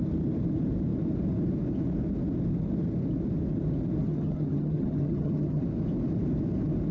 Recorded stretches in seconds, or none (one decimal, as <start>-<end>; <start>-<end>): 0.0-4.0; 5.6-6.9